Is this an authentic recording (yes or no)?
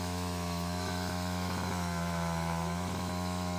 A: no